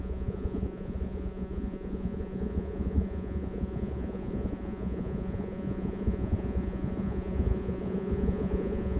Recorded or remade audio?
remade